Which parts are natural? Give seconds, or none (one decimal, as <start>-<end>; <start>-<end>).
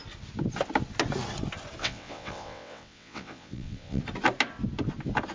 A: 0.0-1.8; 4.0-5.3